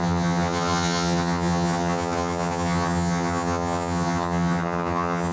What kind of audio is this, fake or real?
fake